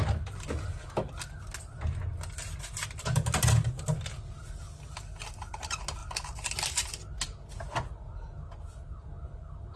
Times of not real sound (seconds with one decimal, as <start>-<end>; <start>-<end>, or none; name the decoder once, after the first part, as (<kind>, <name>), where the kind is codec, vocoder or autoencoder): none